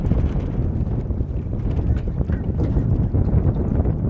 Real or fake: fake